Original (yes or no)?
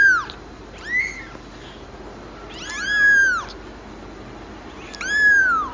yes